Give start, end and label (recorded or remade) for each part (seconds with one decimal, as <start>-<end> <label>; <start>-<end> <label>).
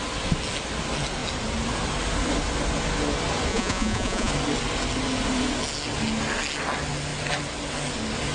0.0-3.5 recorded; 3.5-4.3 remade; 4.3-8.3 recorded